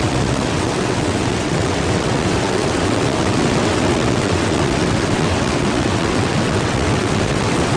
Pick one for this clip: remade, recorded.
remade